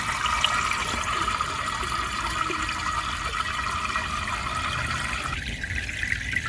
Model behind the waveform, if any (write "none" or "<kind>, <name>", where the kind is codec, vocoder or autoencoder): none